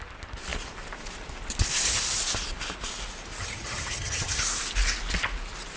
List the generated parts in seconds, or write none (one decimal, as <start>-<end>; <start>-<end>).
3.4-4.4